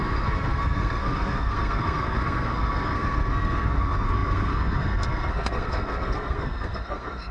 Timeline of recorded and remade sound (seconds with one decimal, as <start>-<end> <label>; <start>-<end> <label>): 0.0-7.3 remade